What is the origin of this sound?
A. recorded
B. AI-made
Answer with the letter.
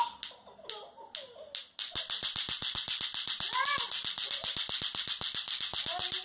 A